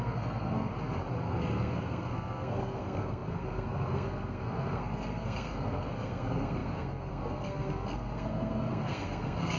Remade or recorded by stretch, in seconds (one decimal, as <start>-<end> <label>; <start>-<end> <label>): 0.0-0.7 remade; 0.7-1.2 recorded; 1.2-9.6 remade